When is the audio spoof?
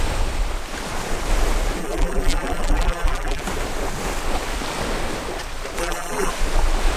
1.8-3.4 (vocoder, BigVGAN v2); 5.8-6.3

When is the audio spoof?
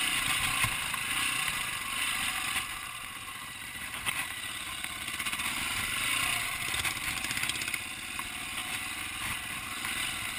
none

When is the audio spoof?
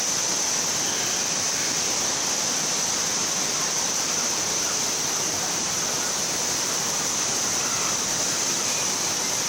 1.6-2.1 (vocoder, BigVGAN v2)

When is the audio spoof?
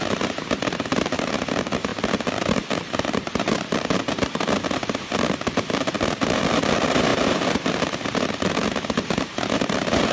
0.0-10.1 (vocoder, BigVGAN v2)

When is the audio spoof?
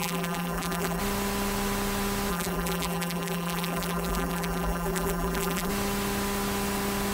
0.0-1.0 (vocoder, BigVGAN v2); 2.3-5.7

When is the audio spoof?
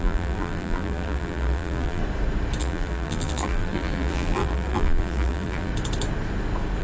0.0-2.0 (vocoder, BigVGAN v2); 2.6-5.7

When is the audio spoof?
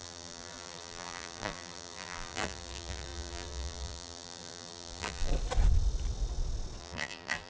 0.0-5.3 (vocoder, BigVGAN v2); 6.8-7.5